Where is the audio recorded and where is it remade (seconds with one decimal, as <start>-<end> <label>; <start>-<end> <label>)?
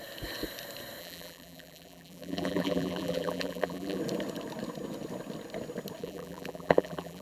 0.0-1.0 recorded; 1.0-4.0 remade; 4.0-6.0 recorded; 6.0-7.2 remade